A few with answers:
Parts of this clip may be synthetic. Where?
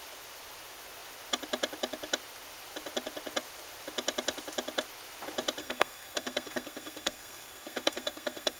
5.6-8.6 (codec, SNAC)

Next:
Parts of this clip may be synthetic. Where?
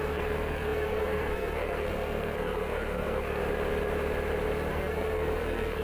0.0-3.4 (codec, SNAC); 4.7-5.8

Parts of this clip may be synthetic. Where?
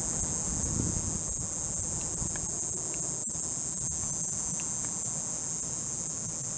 none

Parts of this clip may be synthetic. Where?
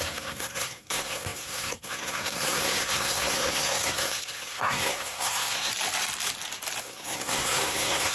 0.0-5.7 (codec, SNAC); 6.8-8.1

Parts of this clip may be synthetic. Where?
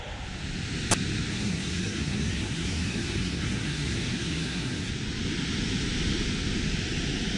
1.3-4.9 (codec, SNAC)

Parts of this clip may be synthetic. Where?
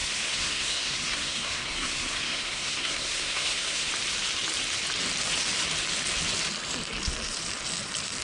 0.0-3.9 (codec, SNAC)